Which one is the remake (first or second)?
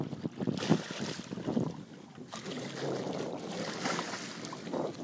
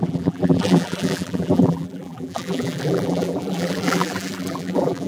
second